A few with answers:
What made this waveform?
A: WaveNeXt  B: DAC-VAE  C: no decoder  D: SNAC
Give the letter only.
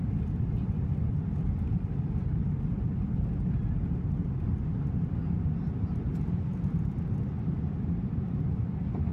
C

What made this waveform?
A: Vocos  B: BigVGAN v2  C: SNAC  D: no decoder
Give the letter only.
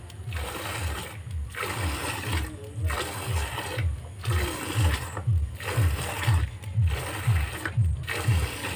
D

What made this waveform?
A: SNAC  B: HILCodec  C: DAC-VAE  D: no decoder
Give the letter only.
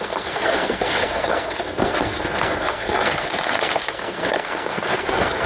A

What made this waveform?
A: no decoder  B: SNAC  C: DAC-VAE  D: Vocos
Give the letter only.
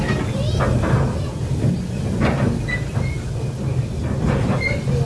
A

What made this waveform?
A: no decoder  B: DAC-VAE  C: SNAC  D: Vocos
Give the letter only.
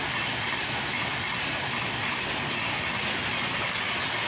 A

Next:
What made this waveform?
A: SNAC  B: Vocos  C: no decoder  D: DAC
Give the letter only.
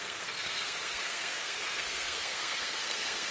A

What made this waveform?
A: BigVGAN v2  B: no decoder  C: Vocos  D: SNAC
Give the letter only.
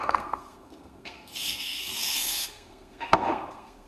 D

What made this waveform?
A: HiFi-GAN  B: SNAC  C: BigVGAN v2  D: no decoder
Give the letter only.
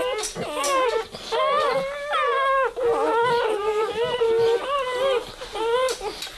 D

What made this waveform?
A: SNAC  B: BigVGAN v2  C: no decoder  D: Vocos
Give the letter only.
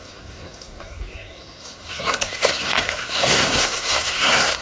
A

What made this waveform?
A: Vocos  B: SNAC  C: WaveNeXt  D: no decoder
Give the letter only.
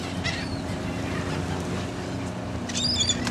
D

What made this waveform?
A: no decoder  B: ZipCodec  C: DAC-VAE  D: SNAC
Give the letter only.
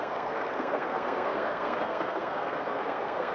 D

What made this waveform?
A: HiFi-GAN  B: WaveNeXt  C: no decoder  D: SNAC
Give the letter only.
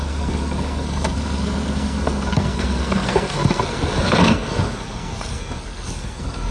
D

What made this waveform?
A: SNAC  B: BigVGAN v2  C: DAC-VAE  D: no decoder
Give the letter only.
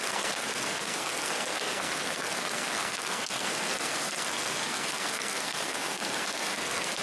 A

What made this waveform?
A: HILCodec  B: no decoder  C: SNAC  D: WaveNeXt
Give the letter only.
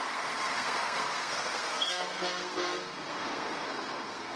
C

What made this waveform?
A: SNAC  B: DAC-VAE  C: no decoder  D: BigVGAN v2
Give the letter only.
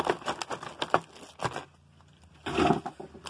C